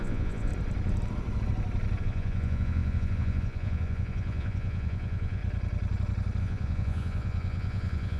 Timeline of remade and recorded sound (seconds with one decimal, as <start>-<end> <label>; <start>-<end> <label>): 0.0-0.5 remade; 0.5-2.0 recorded; 2.0-5.4 remade; 5.4-6.4 recorded; 6.4-8.2 remade